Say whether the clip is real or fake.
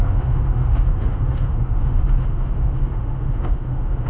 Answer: fake